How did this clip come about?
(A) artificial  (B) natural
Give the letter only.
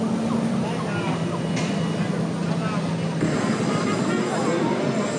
B